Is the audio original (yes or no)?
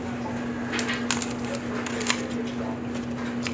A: yes